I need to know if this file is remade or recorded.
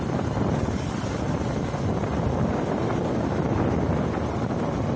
recorded